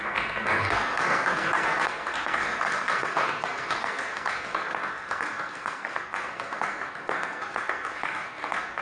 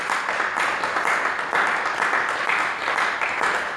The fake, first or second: first